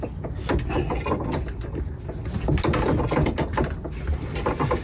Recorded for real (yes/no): yes